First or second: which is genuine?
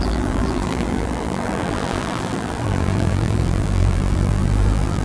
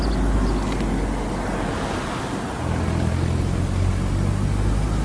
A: second